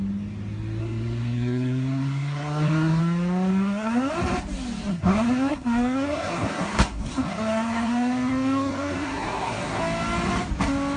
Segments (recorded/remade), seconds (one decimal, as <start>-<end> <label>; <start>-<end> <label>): 0.0-0.8 recorded; 0.8-3.0 remade; 3.0-3.5 recorded; 3.5-4.1 remade; 4.1-4.9 recorded; 4.9-9.8 remade; 9.8-11.0 recorded